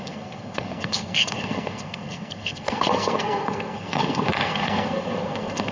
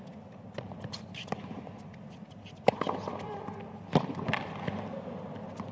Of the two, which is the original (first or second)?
second